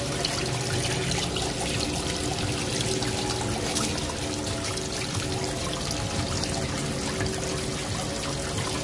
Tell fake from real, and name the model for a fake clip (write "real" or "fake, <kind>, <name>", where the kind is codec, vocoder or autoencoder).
real